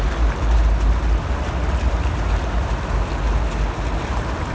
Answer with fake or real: real